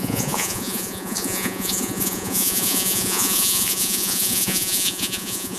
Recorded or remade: remade